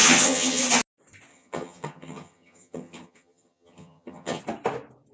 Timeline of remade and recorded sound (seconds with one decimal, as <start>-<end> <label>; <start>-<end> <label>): 0.0-0.6 remade; 0.6-1.3 recorded; 1.3-4.4 remade; 4.4-5.1 recorded